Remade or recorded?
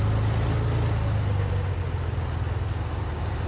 recorded